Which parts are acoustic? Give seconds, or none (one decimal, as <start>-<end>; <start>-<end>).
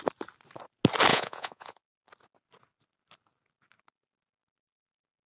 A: 0.0-1.1; 1.8-5.3